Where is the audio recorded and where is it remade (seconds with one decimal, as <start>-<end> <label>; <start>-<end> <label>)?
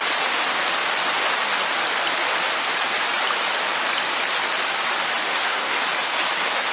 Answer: 0.0-5.3 recorded; 5.3-5.8 remade; 5.8-6.7 recorded